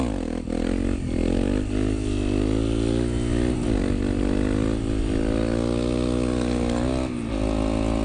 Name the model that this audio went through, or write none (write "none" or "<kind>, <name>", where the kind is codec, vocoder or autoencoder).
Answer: none